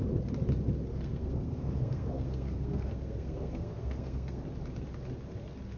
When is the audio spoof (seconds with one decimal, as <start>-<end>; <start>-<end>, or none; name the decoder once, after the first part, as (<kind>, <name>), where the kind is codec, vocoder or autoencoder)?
0.9-4.4 (codec, SNAC)

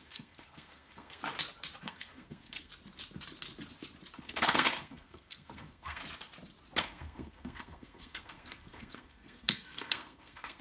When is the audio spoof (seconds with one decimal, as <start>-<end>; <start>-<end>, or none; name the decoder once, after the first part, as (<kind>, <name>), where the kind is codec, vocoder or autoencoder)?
0.0-1.2 (codec, SNAC); 1.8-2.7; 4.2-6.0; 6.8-10.6

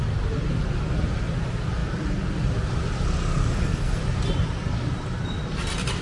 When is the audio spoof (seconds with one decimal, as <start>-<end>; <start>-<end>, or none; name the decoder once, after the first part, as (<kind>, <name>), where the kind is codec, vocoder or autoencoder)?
3.5-4.0 (codec, SNAC)

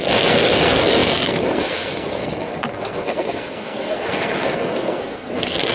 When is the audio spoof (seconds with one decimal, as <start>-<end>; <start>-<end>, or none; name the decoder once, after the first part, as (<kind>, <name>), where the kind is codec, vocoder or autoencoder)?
0.0-5.7 (codec, SNAC)

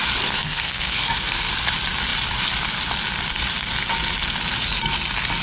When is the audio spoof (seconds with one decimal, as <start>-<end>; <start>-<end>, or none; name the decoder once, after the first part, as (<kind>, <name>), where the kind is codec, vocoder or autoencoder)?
0.4-1.5 (codec, SNAC)

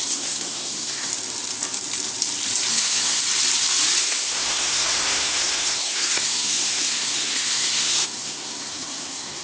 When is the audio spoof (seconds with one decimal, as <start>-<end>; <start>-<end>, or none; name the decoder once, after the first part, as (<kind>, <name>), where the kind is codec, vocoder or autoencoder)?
0.0-1.1 (codec, SNAC); 2.7-3.2; 4.0-9.4